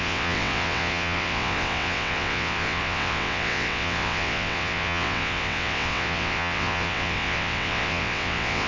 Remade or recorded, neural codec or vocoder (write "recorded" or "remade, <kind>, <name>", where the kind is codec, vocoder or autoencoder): remade, vocoder, WaveNeXt